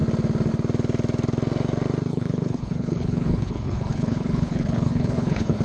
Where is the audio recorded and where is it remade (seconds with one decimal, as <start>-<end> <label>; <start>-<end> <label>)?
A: 0.0-2.1 recorded; 2.1-5.6 remade